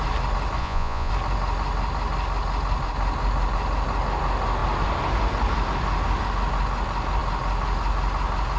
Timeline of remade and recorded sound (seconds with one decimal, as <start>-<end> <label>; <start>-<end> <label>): 0.0-0.6 recorded; 0.6-1.1 remade; 1.1-8.6 recorded